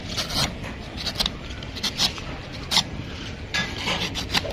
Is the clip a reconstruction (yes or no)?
no